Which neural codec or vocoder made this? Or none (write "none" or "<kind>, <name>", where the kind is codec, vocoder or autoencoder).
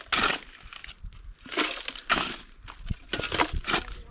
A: none